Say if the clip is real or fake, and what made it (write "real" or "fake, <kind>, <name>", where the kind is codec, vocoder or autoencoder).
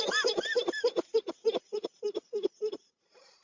real